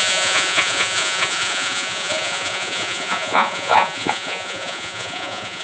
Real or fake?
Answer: fake